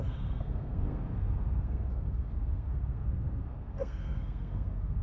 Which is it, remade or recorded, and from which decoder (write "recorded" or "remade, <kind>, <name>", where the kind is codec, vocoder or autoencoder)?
remade, codec, SNAC